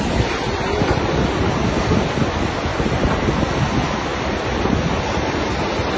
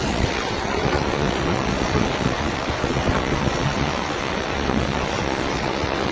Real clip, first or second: first